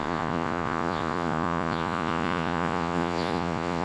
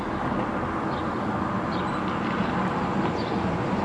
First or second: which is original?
second